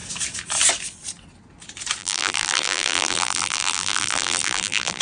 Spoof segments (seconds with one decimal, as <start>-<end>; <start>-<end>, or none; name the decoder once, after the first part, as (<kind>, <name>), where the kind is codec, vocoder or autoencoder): 2.0-5.0 (vocoder, BigVGAN v2)